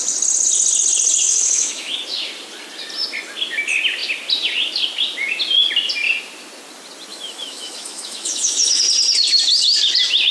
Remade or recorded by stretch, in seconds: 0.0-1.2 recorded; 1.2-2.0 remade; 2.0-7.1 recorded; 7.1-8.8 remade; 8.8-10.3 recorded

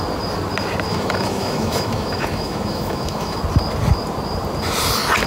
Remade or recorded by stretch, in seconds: 0.0-0.9 recorded; 0.9-3.4 remade; 3.4-5.3 recorded

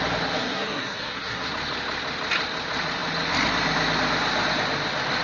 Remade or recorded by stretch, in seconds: 0.0-0.4 recorded; 0.4-1.5 remade; 1.5-5.2 recorded

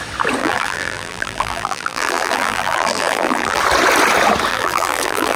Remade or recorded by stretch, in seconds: 0.0-0.4 recorded; 0.4-3.6 remade; 3.6-4.5 recorded; 4.5-5.4 remade

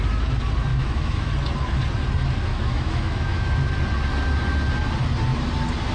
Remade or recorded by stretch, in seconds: 0.0-0.7 recorded; 0.7-1.3 remade; 1.3-2.5 recorded; 2.5-3.7 remade; 3.7-5.9 recorded

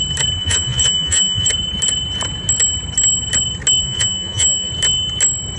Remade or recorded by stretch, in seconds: 0.0-0.4 recorded; 0.4-1.5 remade; 1.5-3.8 recorded; 3.8-4.7 remade; 4.7-5.6 recorded

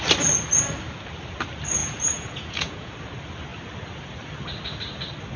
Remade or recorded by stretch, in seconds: 0.0-1.8 recorded; 1.8-2.9 remade; 2.9-5.4 recorded

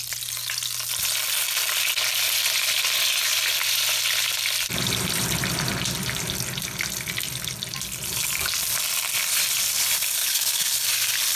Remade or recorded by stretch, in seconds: 0.0-10.2 recorded; 10.2-10.7 remade; 10.7-11.4 recorded